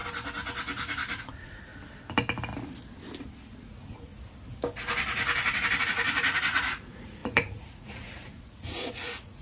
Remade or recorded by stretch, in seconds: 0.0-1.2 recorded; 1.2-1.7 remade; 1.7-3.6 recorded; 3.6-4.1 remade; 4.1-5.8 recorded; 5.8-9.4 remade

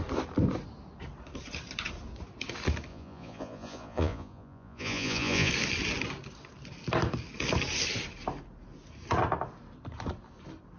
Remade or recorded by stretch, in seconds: 0.0-2.9 recorded; 2.9-5.5 remade; 5.5-10.8 recorded

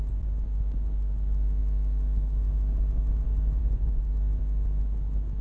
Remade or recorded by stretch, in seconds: 0.0-3.6 recorded; 3.6-4.1 remade; 4.1-5.4 recorded

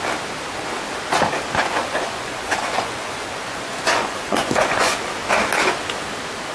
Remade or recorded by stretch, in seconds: 0.0-1.6 recorded; 1.6-5.0 remade; 5.0-6.5 recorded

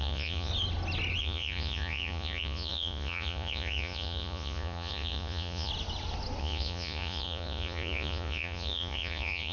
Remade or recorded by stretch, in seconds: 0.0-0.5 remade; 0.5-1.2 recorded; 1.2-5.7 remade; 5.7-6.4 recorded; 6.4-9.5 remade

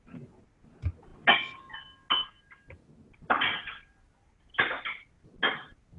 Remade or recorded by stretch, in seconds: 0.0-6.0 recorded

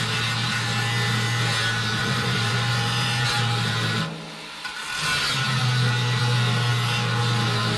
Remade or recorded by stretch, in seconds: 0.0-2.0 recorded; 2.0-3.3 remade; 3.3-7.8 recorded

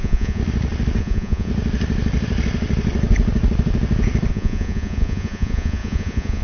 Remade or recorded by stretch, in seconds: 0.0-0.4 remade; 0.4-1.0 recorded; 1.0-1.5 remade; 1.5-4.3 recorded; 4.3-6.4 remade